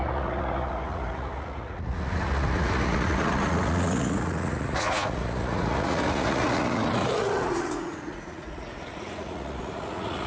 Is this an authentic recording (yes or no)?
no